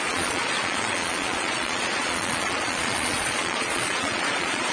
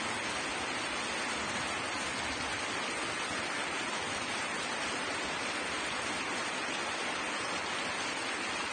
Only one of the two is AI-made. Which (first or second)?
first